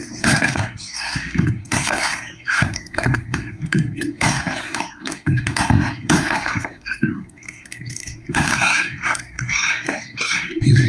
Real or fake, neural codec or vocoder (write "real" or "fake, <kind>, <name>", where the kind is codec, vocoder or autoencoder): fake, codec, SNAC